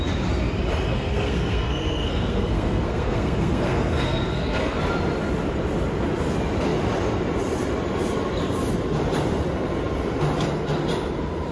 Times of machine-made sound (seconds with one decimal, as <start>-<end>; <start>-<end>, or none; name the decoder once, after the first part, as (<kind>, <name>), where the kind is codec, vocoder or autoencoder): 0.9-4.8 (codec, SNAC)